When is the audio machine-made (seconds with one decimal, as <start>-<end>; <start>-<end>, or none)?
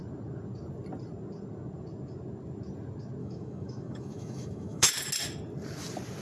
3.2-4.9